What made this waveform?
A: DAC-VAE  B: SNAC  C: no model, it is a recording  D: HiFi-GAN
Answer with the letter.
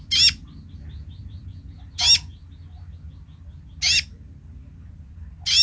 C